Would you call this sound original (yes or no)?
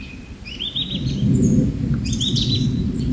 yes